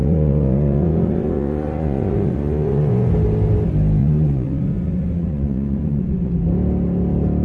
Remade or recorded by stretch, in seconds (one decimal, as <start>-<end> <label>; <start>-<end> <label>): 0.0-3.1 remade; 3.1-4.0 recorded; 4.0-6.3 remade; 6.3-7.4 recorded